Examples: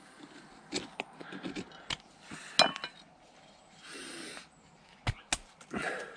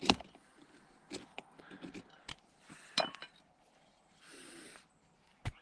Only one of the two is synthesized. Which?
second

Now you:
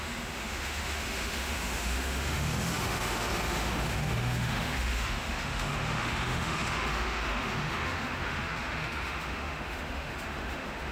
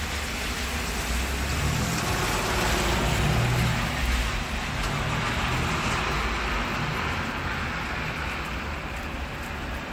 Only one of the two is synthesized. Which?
first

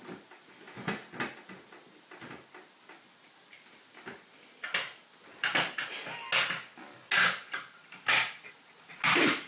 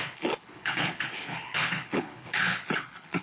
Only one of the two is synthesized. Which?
second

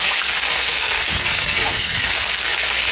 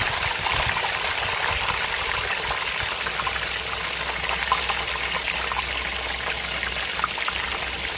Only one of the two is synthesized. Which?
first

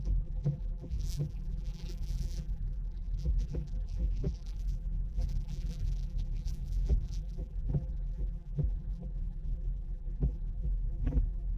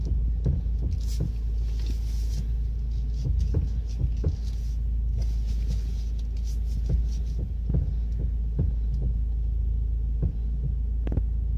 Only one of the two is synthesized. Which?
first